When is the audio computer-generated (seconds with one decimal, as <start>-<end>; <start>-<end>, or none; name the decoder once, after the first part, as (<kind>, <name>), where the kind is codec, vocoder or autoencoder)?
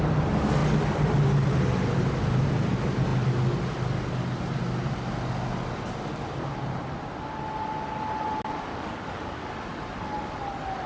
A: 8.7-9.5 (codec, DAC)